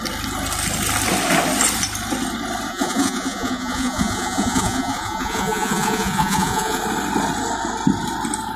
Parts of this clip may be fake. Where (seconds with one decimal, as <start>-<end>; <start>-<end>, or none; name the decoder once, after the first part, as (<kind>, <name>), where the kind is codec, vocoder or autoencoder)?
2.7-6.8 (vocoder, Vocos)

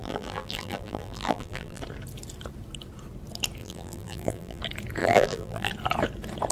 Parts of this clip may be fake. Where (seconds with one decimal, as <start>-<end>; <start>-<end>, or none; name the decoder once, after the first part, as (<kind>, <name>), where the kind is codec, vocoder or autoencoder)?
0.0-1.8 (vocoder, BigVGAN v2); 3.6-4.6; 5.0-5.7

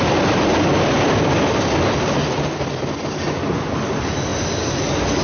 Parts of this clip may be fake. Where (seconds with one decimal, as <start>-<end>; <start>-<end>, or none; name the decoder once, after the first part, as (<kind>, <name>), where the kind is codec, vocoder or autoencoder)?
none

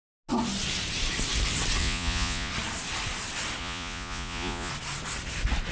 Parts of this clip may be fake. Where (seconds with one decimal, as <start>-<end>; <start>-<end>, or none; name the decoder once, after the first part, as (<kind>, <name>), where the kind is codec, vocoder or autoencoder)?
1.8-2.5 (vocoder, Vocos); 3.6-4.7